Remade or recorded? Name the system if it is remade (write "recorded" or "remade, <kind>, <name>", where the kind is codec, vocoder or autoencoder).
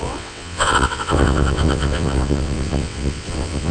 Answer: remade, vocoder, WaveNeXt